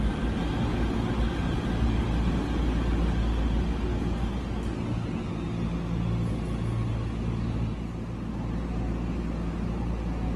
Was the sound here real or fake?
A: real